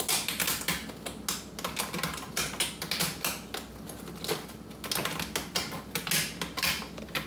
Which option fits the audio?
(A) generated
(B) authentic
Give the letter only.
B